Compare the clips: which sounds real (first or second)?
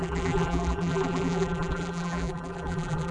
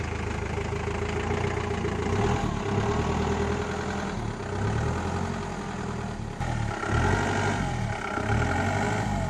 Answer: second